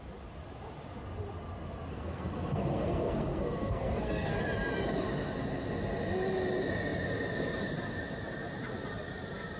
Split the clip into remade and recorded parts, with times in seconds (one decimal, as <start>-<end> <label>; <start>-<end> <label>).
0.0-1.9 recorded; 1.9-4.4 remade; 4.4-9.6 recorded